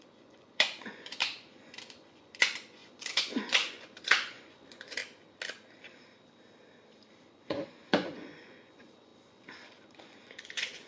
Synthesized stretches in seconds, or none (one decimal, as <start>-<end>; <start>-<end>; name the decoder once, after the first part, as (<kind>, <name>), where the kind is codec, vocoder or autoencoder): 0.0-5.0 (vocoder, Vocos); 7.1-10.9